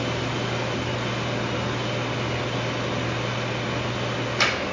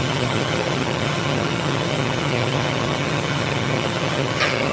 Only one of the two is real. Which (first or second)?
first